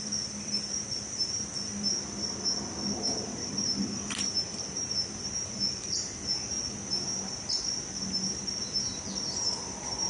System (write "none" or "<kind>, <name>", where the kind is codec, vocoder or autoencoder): none